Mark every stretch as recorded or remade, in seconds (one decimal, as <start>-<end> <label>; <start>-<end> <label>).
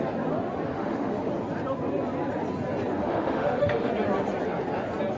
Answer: 0.0-0.7 recorded; 0.7-1.3 remade; 1.3-3.0 recorded; 3.0-3.9 remade; 3.9-5.2 recorded